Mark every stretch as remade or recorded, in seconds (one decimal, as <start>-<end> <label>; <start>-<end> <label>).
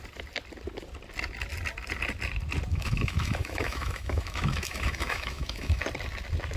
0.0-2.7 recorded; 2.7-5.8 remade; 5.8-6.6 recorded